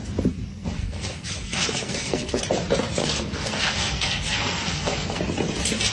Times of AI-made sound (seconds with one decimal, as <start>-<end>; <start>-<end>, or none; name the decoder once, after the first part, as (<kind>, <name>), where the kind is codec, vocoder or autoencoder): 0.5-2.4 (codec, SNAC); 3.0-5.2